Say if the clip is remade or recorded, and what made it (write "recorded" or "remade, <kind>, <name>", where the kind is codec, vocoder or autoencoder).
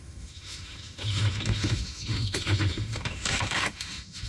remade, autoencoder, DAC-VAE